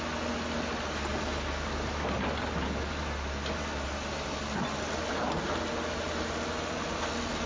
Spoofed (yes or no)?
no